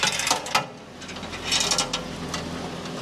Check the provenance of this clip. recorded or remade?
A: recorded